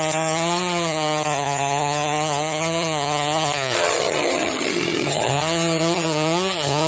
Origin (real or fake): fake